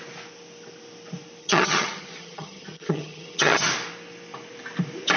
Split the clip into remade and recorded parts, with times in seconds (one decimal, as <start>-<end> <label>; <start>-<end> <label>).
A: 0.0-1.4 recorded; 1.4-3.7 remade; 3.7-5.2 recorded